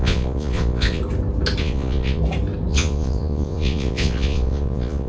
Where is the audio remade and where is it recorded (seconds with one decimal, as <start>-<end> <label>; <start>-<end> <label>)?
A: 0.0-1.0 remade; 1.0-1.6 recorded; 1.6-2.2 remade; 2.2-2.7 recorded; 2.7-5.1 remade